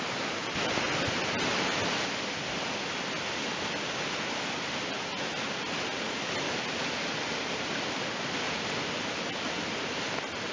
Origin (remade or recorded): recorded